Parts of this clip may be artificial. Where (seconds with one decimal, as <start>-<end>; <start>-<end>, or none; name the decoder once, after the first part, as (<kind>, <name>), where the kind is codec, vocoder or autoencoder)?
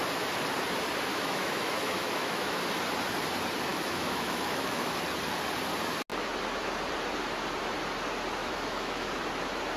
1.1-2.6 (autoencoder, DAC-VAE); 3.7-5.0; 8.4-9.1